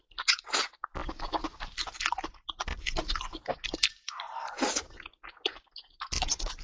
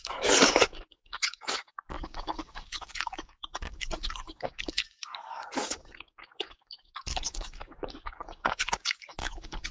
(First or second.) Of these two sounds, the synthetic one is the second